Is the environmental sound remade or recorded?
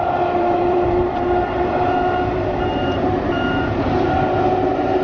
remade